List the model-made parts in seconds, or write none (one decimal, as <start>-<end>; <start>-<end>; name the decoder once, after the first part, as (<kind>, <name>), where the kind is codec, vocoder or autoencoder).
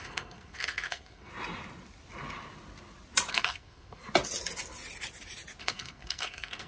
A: 0.0-1.3 (codec, SNAC); 3.3-4.0; 5.6-6.7